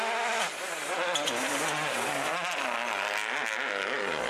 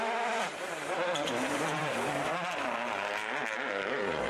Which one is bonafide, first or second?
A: first